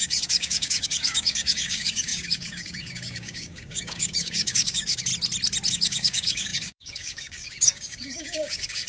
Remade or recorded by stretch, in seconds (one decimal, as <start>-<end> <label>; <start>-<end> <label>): 0.0-5.1 remade; 5.1-5.7 recorded; 5.7-8.9 remade